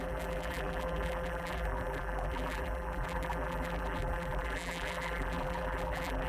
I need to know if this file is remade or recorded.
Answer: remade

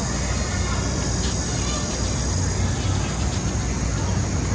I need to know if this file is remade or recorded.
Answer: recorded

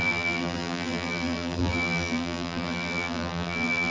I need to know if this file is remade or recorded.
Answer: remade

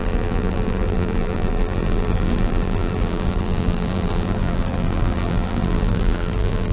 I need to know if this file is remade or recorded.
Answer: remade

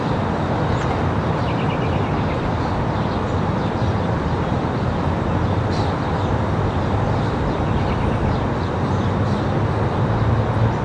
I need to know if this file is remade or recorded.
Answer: recorded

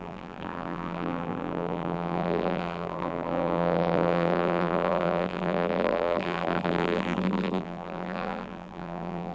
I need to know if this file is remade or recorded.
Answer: remade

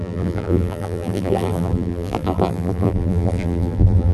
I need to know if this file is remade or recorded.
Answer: remade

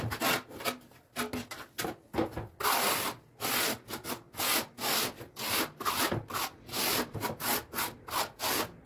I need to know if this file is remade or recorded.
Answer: recorded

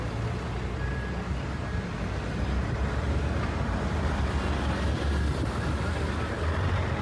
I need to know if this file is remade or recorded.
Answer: recorded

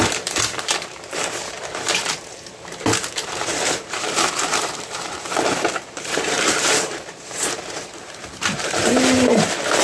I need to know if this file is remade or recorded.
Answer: remade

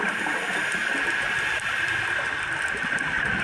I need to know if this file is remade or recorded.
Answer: recorded